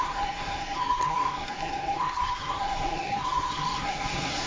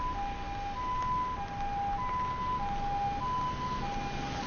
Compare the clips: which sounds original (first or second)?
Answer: second